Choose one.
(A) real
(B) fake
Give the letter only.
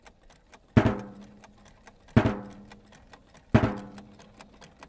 A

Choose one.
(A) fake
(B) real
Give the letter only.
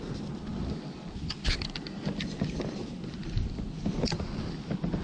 B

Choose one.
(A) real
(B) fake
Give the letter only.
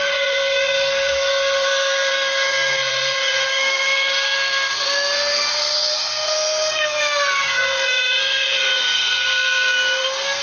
B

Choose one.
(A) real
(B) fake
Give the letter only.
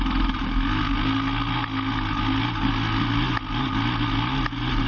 A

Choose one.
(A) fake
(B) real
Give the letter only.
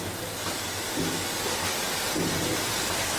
B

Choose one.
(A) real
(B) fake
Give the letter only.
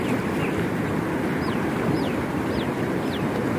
A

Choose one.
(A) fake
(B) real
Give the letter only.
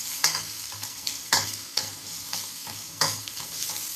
A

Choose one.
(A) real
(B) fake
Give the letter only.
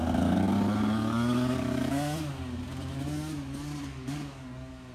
B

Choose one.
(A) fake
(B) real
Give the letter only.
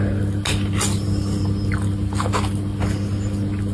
B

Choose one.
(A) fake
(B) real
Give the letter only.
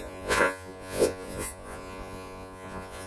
A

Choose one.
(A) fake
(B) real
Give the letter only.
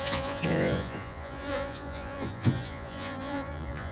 A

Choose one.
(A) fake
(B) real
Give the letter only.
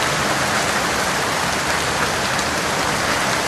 B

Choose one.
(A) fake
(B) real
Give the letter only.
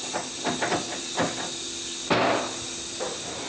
B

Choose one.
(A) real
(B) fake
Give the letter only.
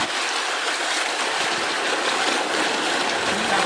A